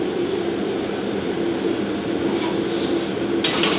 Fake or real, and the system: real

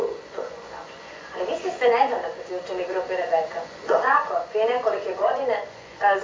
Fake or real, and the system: fake, vocoder, Vocos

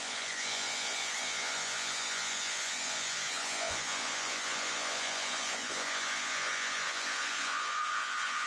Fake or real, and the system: fake, vocoder, Vocos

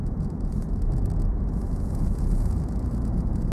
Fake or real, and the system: fake, vocoder, Vocos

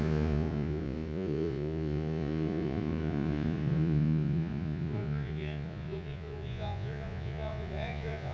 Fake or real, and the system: fake, vocoder, Vocos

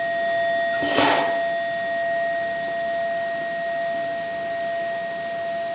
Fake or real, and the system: real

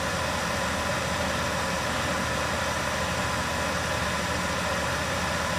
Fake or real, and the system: real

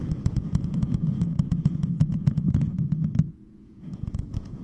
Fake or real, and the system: fake, vocoder, Vocos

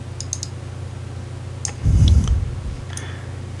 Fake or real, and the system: real